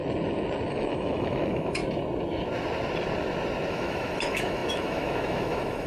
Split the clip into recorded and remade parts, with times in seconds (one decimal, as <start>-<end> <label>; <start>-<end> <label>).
0.0-0.7 recorded; 0.7-1.8 remade; 1.8-3.7 recorded; 3.7-5.9 remade